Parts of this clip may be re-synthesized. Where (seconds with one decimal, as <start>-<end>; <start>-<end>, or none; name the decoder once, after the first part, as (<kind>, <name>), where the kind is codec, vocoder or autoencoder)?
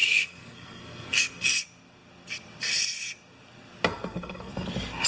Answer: 0.0-1.6 (codec, SNAC); 3.9-4.5